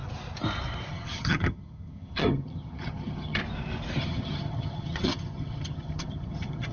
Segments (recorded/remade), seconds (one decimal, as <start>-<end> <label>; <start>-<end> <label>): 0.0-0.9 recorded; 0.9-3.4 remade; 3.4-4.0 recorded; 4.0-6.7 remade